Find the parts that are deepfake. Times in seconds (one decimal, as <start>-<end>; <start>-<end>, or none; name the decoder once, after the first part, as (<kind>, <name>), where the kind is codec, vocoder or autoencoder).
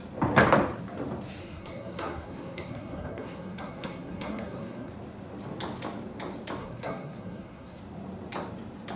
1.4-4.9 (codec, SNAC); 6.6-7.8